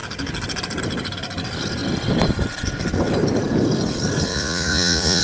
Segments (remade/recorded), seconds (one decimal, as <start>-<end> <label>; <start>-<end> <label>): 0.0-4.3 recorded; 4.3-5.2 remade